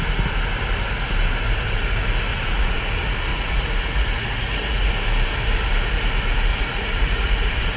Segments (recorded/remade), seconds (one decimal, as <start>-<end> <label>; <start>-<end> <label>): 0.0-2.3 recorded; 2.3-2.8 remade; 2.8-3.3 recorded; 3.3-4.9 remade; 4.9-6.5 recorded; 6.5-7.8 remade